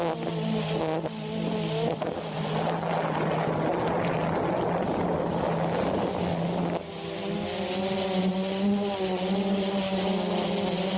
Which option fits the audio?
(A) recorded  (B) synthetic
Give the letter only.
A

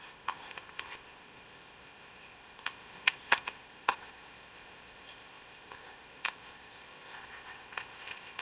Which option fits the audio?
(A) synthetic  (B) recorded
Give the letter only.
A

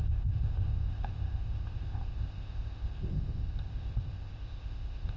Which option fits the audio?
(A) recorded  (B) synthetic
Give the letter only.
B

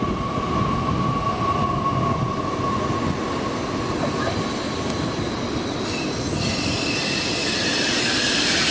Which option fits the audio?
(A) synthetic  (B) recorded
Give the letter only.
B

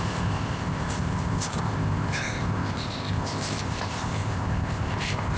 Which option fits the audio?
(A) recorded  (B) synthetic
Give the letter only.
B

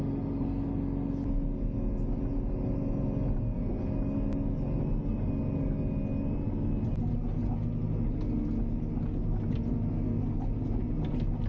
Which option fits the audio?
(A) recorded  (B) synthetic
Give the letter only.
A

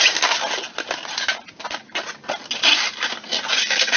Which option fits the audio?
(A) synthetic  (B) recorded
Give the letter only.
B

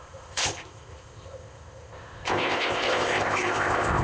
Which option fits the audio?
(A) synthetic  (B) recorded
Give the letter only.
A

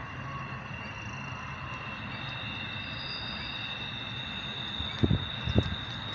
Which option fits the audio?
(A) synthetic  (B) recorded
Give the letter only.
B